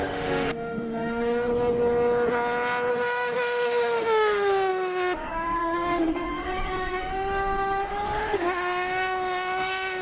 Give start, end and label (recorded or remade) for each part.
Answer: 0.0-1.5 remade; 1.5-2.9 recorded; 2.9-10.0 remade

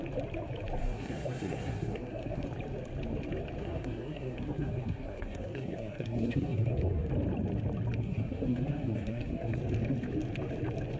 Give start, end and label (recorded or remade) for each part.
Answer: 0.0-0.8 recorded; 0.8-2.5 remade; 2.5-3.6 recorded; 3.6-7.1 remade; 7.1-8.0 recorded; 8.0-9.6 remade; 9.6-11.0 recorded

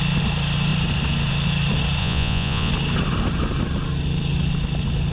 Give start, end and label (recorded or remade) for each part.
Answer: 0.0-2.0 recorded; 2.0-2.7 remade; 2.7-5.1 recorded

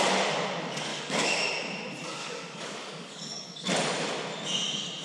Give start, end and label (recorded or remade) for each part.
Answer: 0.0-0.9 recorded; 0.9-1.5 remade; 1.5-2.2 recorded; 2.2-3.7 remade; 3.7-5.0 recorded

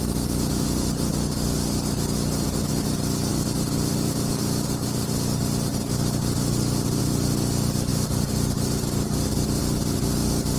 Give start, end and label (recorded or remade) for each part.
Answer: 0.0-7.9 recorded; 7.9-9.6 remade; 9.6-10.6 recorded